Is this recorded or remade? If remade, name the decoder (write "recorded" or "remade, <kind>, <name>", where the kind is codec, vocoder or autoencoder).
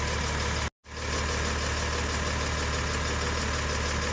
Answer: recorded